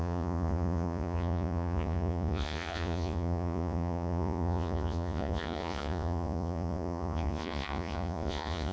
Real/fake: fake